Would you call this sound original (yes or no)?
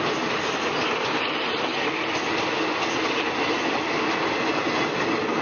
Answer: yes